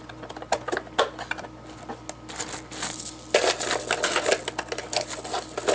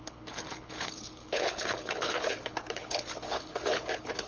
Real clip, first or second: first